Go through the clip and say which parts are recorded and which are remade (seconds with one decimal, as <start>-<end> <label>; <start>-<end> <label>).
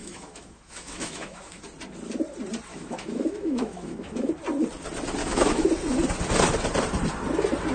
0.0-1.6 remade; 1.6-2.7 recorded; 2.7-4.3 remade; 4.3-5.2 recorded; 5.2-5.7 remade; 5.7-7.7 recorded